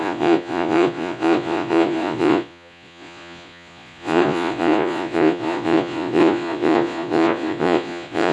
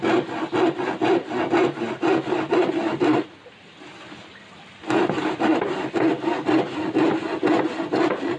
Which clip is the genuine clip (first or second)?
second